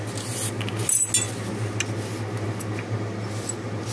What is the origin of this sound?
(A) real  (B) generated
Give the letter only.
A